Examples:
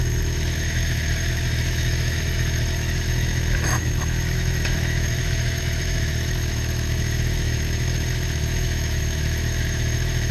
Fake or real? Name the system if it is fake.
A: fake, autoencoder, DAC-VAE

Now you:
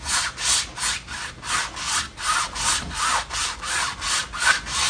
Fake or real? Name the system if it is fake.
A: real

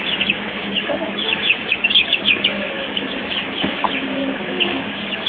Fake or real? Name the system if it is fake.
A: fake, codec, DAC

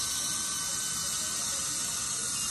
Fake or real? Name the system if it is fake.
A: real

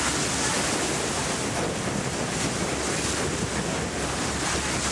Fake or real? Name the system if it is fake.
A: real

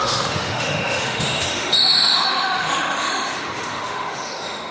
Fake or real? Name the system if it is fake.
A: fake, autoencoder, DAC-VAE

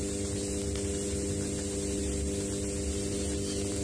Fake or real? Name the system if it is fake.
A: real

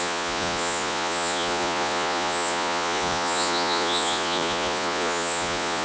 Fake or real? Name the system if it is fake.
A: fake, vocoder, Vocos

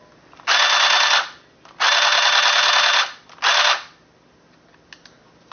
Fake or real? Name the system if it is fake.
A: real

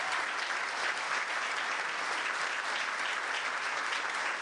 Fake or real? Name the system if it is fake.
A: real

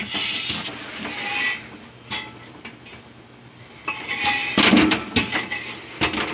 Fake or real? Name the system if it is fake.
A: real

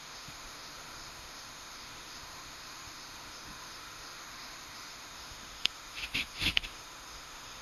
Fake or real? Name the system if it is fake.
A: fake, autoencoder, DAC-VAE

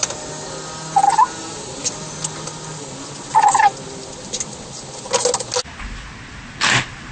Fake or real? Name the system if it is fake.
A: real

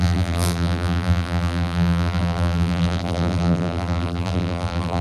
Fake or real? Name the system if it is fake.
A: fake, vocoder, BigVGAN v2